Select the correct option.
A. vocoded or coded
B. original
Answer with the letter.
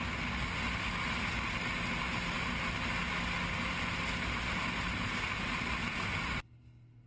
B